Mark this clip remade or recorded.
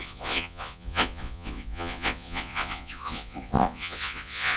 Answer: remade